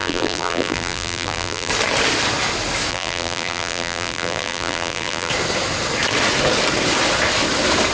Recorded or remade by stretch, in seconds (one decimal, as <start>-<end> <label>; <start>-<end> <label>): 0.0-1.7 remade; 1.7-2.9 recorded; 2.9-5.3 remade; 5.3-7.9 recorded